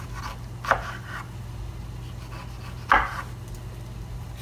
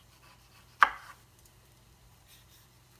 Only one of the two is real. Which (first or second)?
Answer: first